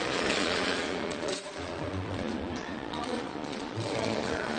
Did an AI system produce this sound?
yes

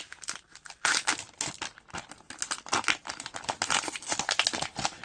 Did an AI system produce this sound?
no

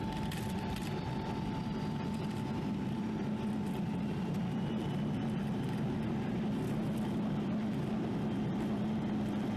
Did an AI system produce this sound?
no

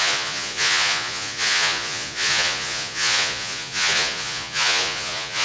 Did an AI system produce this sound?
yes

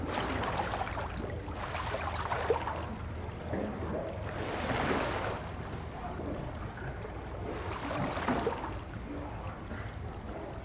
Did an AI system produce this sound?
no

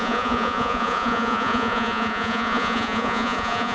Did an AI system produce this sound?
yes